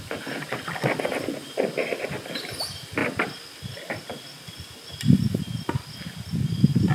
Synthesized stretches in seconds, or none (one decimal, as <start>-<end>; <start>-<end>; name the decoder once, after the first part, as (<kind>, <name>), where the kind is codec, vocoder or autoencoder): none